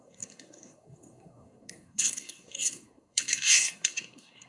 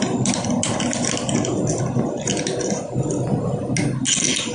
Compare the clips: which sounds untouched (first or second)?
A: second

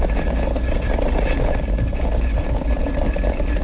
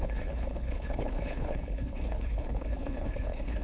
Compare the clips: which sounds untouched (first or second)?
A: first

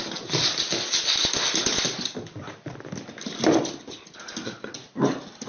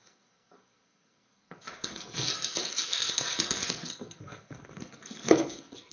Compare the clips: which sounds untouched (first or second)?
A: first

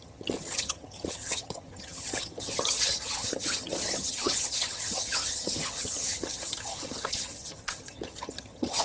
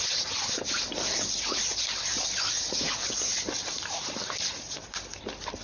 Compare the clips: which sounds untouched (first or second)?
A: second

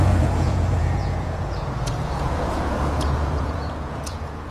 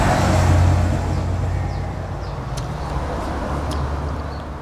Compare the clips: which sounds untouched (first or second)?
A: second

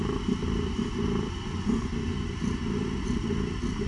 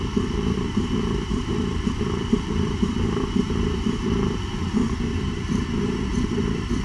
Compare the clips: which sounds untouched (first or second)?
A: first